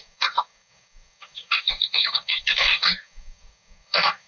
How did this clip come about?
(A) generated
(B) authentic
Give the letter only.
A